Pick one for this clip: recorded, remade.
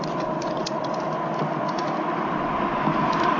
remade